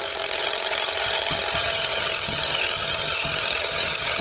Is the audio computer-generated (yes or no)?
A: yes